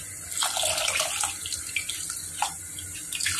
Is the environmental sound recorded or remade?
recorded